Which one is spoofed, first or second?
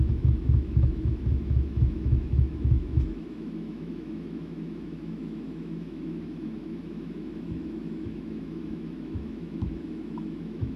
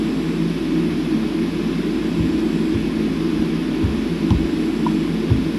first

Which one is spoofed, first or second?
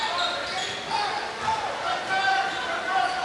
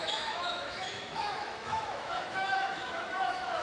second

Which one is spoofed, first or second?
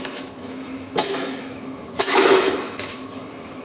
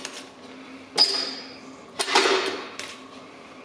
first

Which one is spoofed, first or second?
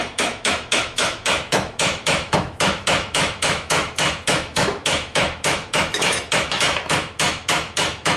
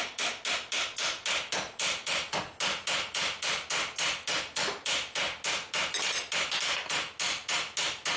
first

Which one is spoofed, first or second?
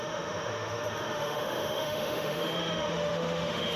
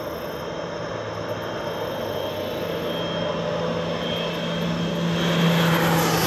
first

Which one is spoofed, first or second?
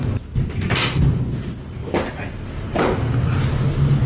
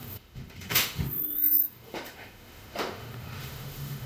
second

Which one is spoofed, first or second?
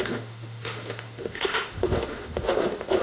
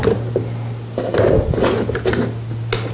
first